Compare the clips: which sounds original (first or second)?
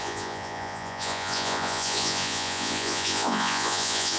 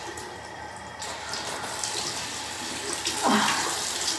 second